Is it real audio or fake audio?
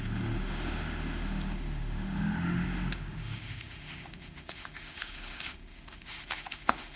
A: fake